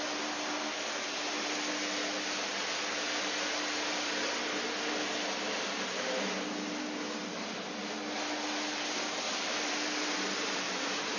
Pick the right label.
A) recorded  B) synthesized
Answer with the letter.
A